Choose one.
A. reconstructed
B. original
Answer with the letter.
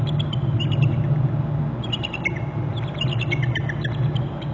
B